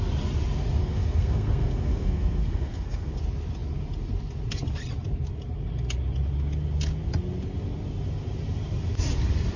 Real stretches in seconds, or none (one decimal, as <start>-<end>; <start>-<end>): 0.0-0.8; 3.2-9.6